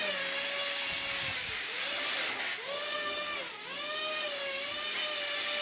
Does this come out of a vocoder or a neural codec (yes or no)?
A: no